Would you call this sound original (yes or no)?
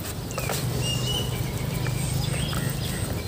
yes